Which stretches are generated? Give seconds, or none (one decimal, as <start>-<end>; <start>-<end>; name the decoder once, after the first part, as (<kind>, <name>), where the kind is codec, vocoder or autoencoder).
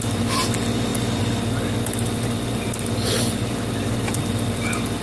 none